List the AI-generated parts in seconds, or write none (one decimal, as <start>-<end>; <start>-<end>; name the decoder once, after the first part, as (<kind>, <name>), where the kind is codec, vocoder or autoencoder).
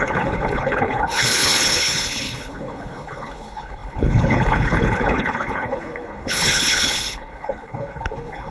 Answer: 0.0-8.5 (codec, HILCodec)